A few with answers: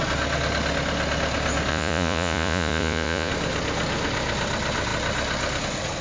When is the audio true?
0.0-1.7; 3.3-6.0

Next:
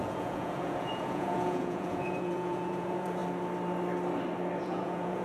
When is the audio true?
3.2-4.6

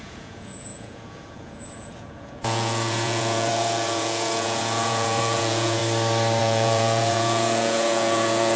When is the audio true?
5.8-6.4

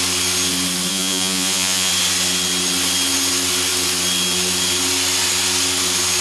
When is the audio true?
0.0-0.9; 1.9-6.2